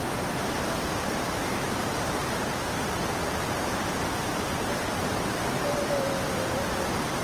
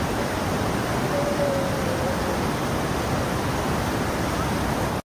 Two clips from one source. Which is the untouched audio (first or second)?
second